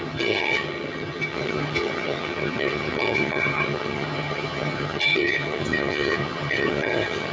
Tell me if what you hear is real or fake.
fake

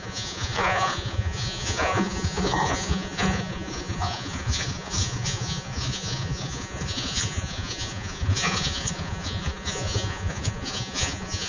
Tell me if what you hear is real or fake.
fake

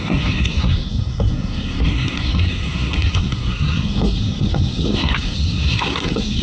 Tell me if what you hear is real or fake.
fake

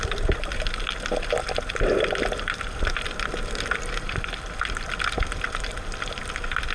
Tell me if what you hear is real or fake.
real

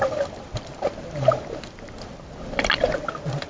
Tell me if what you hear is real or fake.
real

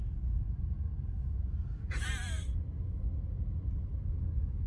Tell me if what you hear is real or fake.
real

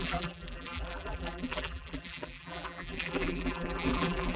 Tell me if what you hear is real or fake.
fake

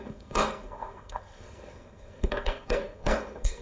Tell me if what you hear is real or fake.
fake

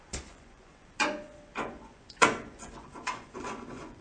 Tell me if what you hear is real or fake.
fake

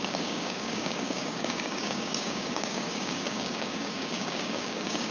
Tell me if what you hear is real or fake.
fake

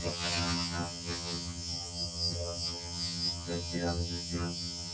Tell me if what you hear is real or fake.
fake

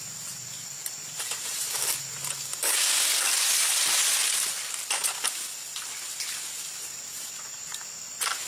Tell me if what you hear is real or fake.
real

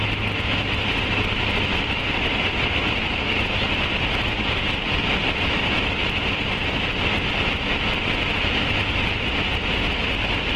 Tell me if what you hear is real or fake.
real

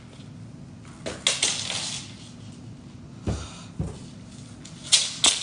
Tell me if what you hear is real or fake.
real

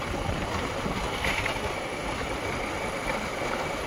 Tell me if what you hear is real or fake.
real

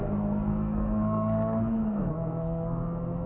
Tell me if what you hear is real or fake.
fake